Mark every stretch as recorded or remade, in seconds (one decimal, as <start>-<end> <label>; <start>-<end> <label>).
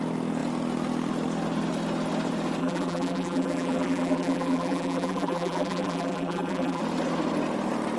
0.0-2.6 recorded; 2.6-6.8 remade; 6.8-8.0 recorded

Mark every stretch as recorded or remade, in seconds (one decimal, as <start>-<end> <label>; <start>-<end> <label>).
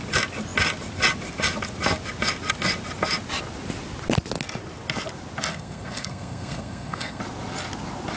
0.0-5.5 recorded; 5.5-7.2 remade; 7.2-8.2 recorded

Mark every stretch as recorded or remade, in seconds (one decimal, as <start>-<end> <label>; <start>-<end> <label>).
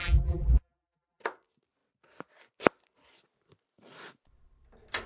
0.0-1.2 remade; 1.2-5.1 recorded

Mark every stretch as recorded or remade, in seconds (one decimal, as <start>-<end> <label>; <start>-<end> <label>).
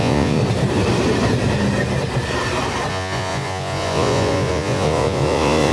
0.0-0.4 remade; 0.4-2.9 recorded; 2.9-5.7 remade